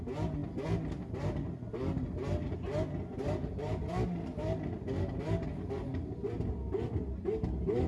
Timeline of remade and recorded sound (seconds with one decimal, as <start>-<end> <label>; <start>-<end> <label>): 0.0-7.9 recorded